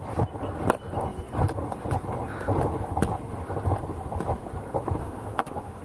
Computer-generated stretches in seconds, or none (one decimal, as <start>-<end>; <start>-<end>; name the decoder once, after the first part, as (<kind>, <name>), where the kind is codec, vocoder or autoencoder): 5.0-5.8 (autoencoder, DAC-VAE)